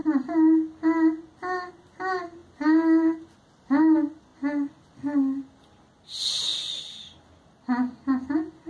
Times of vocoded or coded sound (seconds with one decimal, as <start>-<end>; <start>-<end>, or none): none